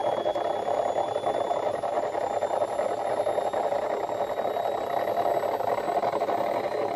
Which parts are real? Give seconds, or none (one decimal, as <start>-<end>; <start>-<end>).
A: 0.0-7.0